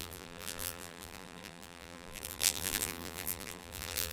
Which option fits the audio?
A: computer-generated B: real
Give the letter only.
A